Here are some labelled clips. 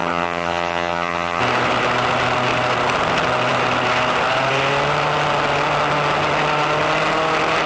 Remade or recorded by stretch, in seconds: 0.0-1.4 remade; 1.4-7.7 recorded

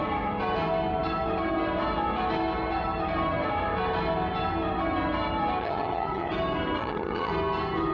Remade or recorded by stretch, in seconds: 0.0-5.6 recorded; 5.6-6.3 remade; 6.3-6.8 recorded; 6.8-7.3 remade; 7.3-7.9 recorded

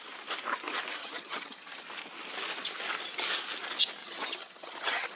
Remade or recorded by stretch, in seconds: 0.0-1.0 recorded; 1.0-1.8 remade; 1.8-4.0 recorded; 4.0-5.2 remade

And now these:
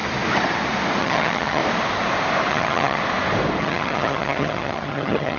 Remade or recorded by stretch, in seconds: 0.0-1.0 recorded; 1.0-1.6 remade; 1.6-2.5 recorded; 2.5-3.0 remade; 3.0-3.6 recorded; 3.6-5.4 remade

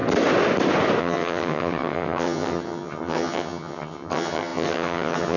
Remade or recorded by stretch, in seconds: 0.0-1.0 recorded; 1.0-5.4 remade